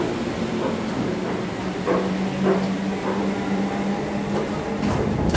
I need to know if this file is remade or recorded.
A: recorded